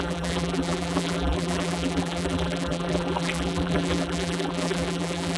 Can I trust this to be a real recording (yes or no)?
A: no